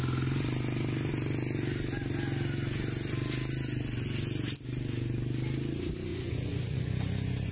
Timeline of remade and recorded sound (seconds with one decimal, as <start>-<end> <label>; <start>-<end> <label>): 0.0-6.1 recorded; 6.1-7.5 remade